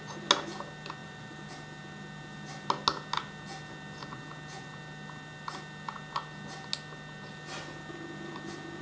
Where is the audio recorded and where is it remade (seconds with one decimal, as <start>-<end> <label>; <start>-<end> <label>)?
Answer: 0.0-1.0 recorded; 1.0-1.5 remade; 1.5-8.8 recorded